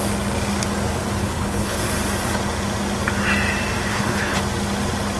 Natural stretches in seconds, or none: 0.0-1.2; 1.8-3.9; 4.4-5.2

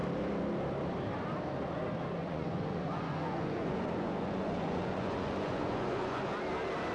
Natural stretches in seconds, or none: 0.0-2.2; 6.3-6.9

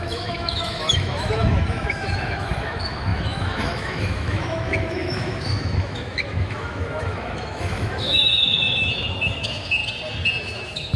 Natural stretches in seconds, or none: 9.8-10.4

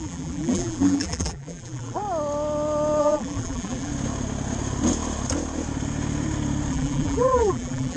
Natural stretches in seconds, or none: 2.0-3.0; 3.9-6.7

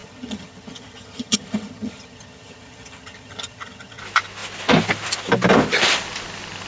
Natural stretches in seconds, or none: 4.0-6.7

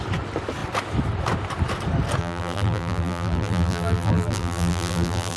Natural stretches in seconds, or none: 0.0-2.2

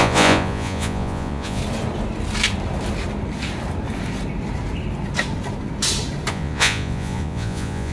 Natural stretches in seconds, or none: 1.6-6.3

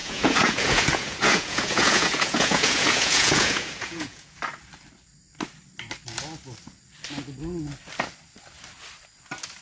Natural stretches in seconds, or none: 4.4-9.6